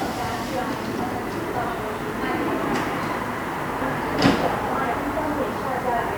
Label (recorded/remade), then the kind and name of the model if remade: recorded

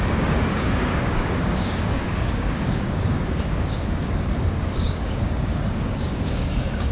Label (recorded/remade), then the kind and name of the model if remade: remade, codec, DAC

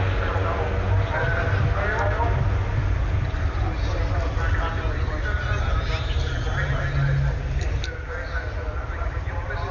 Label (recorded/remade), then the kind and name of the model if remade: recorded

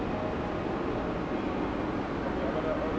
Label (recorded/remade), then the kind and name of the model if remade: recorded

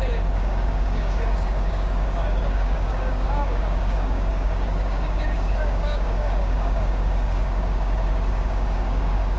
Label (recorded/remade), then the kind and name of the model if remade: remade, codec, DAC